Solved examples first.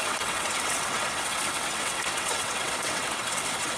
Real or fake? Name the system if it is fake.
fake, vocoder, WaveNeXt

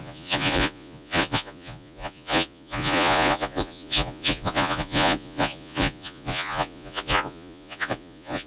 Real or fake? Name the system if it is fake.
fake, vocoder, Vocos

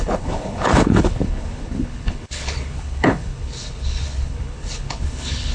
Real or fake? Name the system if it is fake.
fake, codec, HILCodec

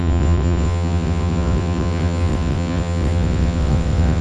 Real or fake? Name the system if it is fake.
fake, vocoder, WaveNeXt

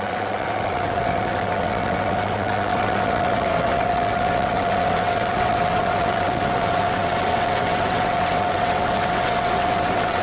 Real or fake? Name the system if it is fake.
fake, vocoder, WaveNeXt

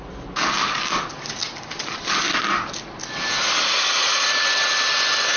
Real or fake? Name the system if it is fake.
real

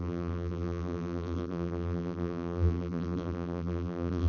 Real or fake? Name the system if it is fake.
fake, vocoder, BigVGAN v2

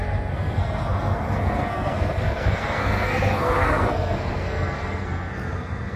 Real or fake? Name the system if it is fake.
fake, codec, SNAC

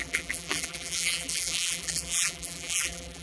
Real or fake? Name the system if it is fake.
fake, vocoder, BigVGAN v2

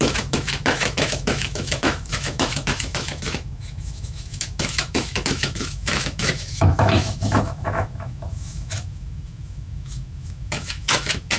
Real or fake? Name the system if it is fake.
fake, autoencoder, DAC-VAE